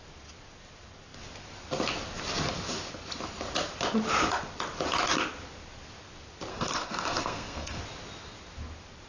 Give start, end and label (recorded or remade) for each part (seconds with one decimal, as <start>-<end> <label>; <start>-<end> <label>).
0.0-6.5 recorded; 6.5-7.8 remade; 7.8-9.1 recorded